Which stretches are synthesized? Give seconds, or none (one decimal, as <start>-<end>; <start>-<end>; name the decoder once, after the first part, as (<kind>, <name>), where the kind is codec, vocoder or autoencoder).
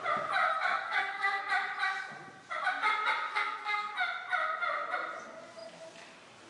0.5-1.4 (codec, SNAC); 3.3-3.9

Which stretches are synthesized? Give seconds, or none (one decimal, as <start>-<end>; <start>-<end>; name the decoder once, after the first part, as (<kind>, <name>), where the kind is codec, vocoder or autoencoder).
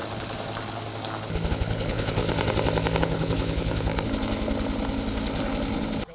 1.5-2.2 (codec, HILCodec); 3.0-3.9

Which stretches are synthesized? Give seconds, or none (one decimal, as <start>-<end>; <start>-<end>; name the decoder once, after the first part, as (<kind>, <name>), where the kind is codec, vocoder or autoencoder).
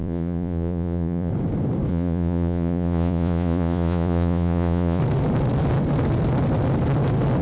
0.0-1.3 (vocoder, Vocos); 1.9-5.0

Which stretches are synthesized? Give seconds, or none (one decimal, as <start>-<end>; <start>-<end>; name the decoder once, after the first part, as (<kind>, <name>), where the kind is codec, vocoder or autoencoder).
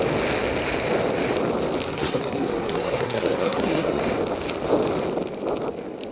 1.9-4.0 (codec, SNAC)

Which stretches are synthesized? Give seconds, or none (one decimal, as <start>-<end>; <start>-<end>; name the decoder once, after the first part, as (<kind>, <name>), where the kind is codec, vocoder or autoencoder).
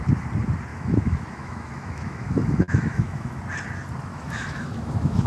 0.7-3.4 (autoencoder, DAC-VAE); 4.1-5.3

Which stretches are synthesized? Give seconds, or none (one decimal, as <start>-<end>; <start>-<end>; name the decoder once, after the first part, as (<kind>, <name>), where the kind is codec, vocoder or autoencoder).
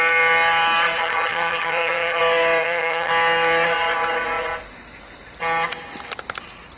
1.0-2.2 (vocoder, HiFi-GAN); 2.6-3.1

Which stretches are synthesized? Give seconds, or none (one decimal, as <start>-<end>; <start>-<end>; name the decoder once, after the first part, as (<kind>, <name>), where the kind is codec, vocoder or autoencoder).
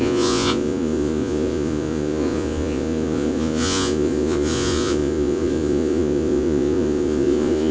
0.0-7.7 (vocoder, Vocos)